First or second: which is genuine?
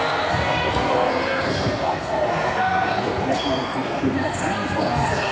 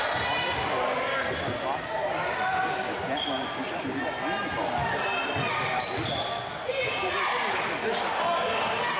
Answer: second